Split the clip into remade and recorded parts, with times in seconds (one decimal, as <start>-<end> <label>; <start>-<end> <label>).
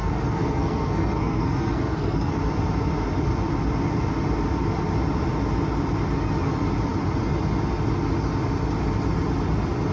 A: 0.0-2.3 remade; 2.3-9.9 recorded